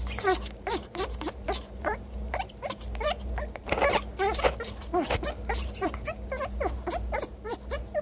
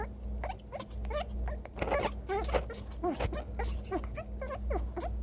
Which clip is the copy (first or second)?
first